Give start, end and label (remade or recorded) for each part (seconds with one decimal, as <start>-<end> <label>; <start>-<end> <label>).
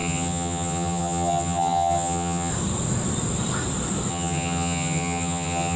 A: 0.0-2.5 remade; 2.5-4.1 recorded; 4.1-5.8 remade